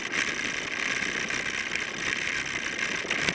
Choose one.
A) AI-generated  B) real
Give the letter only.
B